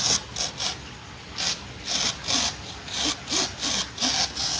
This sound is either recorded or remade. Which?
recorded